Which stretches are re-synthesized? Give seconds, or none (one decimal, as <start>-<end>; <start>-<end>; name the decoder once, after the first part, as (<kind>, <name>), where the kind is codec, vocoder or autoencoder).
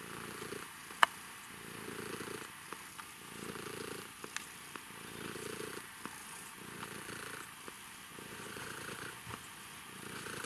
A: 6.2-6.8 (vocoder, Vocos); 8.1-10.5